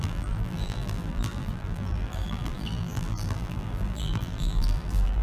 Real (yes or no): no